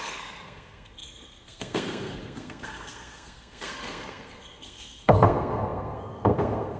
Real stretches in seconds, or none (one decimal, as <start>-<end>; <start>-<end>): none